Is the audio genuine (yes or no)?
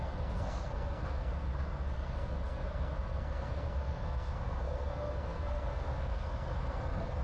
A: no